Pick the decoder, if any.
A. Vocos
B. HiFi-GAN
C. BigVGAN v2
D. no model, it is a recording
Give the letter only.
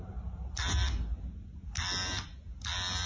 D